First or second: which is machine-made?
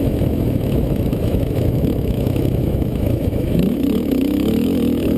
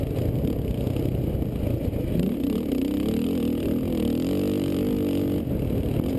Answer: first